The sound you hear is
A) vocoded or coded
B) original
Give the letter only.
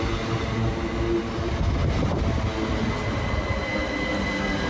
B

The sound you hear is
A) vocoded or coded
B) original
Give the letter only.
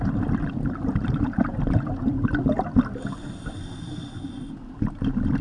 B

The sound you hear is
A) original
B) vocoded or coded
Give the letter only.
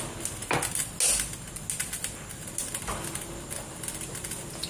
A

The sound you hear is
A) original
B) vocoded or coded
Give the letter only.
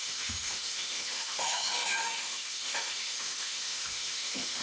B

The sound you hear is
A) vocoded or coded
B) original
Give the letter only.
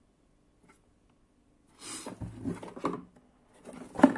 B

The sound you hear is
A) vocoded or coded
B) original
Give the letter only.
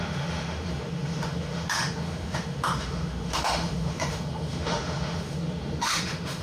A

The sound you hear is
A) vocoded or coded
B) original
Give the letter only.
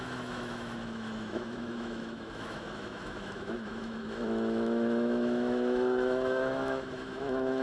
A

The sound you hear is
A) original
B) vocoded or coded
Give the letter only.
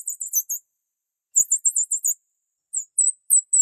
A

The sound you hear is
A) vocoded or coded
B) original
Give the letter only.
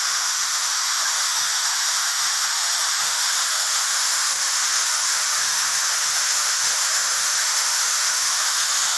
A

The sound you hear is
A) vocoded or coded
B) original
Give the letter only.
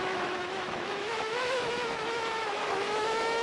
A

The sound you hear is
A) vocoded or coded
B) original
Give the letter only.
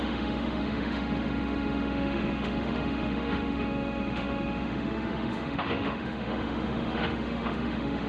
A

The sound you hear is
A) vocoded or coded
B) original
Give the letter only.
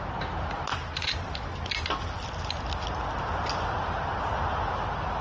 B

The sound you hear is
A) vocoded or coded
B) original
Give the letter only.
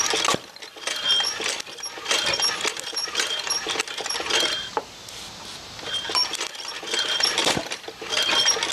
B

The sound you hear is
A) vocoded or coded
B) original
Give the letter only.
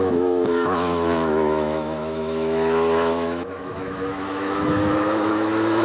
A